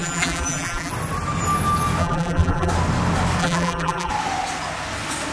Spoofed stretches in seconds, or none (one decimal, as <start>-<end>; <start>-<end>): 0.0-0.9; 2.0-2.7; 3.4-4.1